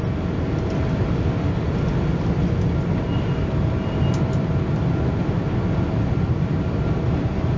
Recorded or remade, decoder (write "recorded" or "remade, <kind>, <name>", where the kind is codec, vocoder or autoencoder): recorded